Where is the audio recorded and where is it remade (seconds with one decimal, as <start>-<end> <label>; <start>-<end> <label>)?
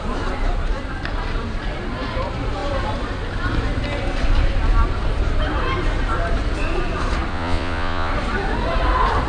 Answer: 0.0-7.3 recorded; 7.3-8.1 remade; 8.1-9.3 recorded